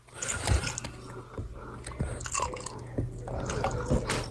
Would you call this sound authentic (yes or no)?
yes